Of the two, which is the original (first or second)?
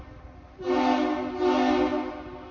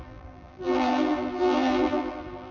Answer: first